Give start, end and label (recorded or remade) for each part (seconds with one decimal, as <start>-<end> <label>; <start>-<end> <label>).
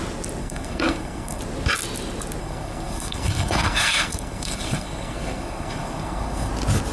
0.0-0.4 recorded; 0.4-1.4 remade; 1.4-2.4 recorded; 2.4-6.5 remade; 6.5-6.9 recorded